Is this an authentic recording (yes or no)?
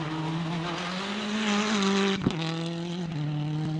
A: yes